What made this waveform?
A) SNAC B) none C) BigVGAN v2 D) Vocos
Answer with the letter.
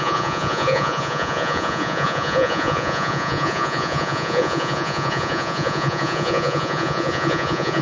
D